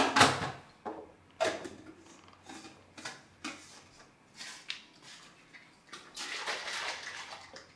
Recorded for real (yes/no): yes